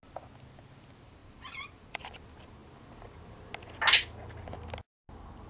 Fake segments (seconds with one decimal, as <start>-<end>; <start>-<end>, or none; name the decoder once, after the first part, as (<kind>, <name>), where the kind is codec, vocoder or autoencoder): 1.2-2.0 (vocoder, BigVGAN v2)